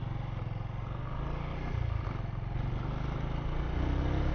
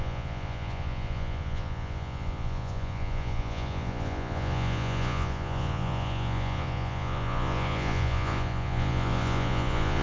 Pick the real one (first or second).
first